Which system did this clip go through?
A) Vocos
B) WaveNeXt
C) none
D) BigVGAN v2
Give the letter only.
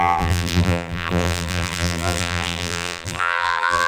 D